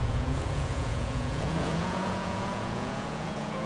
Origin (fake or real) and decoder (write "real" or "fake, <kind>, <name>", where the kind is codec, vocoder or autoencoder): fake, vocoder, Vocos